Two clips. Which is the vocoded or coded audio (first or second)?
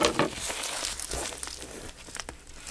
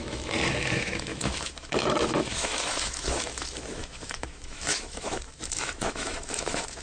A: second